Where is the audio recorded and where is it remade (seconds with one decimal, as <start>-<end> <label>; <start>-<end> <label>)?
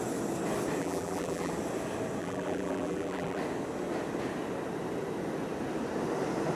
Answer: 0.0-0.8 recorded; 0.8-1.5 remade; 1.5-2.2 recorded; 2.2-3.4 remade; 3.4-6.6 recorded